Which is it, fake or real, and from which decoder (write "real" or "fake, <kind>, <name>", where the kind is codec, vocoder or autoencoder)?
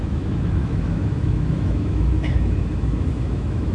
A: fake, autoencoder, DAC-VAE